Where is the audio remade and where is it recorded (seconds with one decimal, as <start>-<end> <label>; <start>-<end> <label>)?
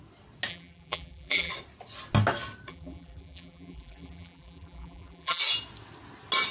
0.0-0.5 recorded; 0.5-1.5 remade; 1.5-2.7 recorded; 2.7-5.4 remade; 5.4-6.5 recorded